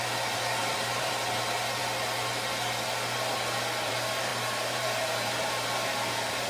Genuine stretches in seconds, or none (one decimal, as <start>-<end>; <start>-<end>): 0.0-0.6; 1.1-4.3